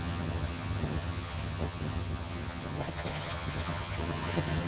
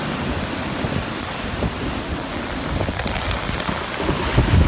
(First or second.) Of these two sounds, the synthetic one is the first